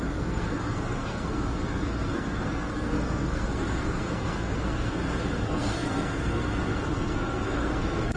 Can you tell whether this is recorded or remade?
remade